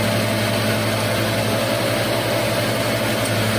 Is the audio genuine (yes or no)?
yes